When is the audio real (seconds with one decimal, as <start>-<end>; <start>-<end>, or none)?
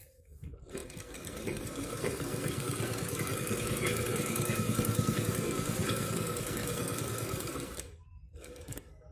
none